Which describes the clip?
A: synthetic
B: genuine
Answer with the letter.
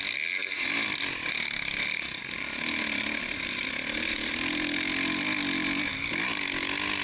B